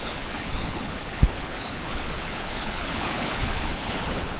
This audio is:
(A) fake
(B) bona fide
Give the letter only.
A